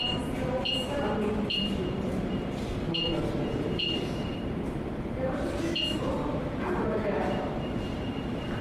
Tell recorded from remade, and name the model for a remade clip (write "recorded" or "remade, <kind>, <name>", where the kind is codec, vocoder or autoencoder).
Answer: remade, vocoder, BigVGAN v2